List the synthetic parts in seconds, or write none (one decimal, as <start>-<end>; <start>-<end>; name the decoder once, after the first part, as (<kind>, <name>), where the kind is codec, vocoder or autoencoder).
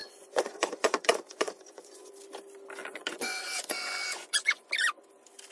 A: 0.0-2.1 (vocoder, Vocos); 2.8-4.7